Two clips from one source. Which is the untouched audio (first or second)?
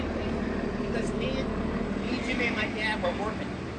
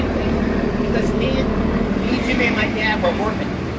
first